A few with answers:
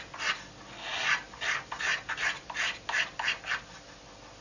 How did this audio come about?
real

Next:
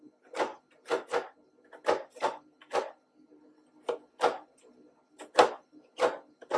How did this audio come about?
real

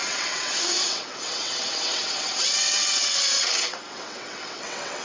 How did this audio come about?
fake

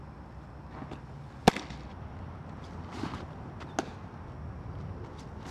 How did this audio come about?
real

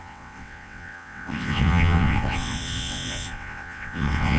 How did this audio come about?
fake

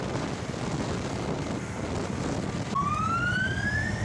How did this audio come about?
real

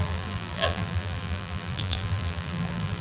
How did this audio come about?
fake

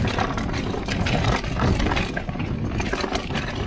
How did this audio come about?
real